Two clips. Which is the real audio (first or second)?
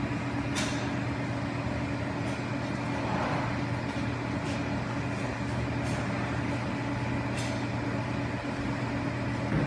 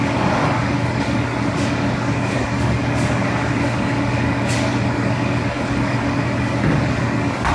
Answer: first